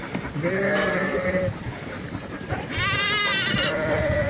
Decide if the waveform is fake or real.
fake